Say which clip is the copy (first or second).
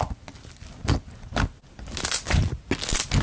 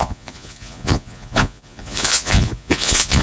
second